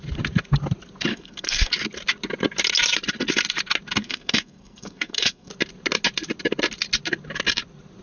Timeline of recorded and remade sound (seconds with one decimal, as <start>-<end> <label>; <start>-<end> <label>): 0.0-1.1 recorded; 1.1-1.7 remade; 1.7-4.0 recorded; 4.0-5.5 remade; 5.5-8.0 recorded